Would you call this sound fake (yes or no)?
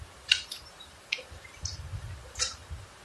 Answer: yes